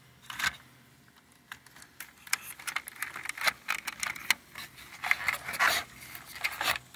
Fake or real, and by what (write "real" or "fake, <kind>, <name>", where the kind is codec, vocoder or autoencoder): real